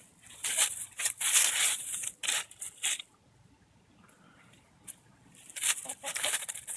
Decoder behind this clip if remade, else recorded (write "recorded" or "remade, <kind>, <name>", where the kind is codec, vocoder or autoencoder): recorded